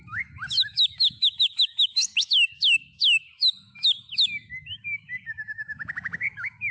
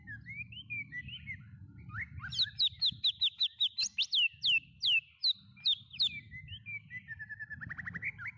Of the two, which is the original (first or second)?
second